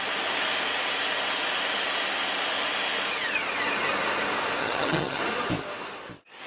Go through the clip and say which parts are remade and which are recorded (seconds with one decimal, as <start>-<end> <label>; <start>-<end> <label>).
0.0-4.6 recorded; 4.6-5.2 remade; 5.2-6.5 recorded